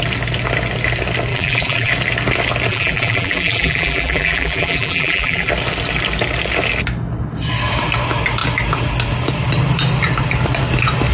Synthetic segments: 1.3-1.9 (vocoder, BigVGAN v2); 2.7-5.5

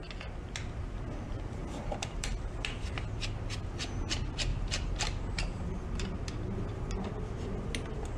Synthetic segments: 1.6-2.3 (vocoder, BigVGAN v2)

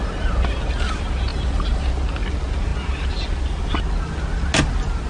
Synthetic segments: 1.3-1.9 (vocoder, BigVGAN v2)